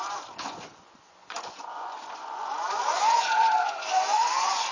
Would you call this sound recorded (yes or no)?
no